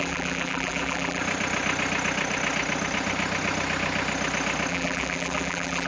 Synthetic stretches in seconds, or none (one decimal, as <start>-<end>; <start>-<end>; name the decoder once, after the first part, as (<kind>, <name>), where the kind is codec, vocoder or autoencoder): 0.0-1.2 (vocoder, BigVGAN v2); 4.7-5.9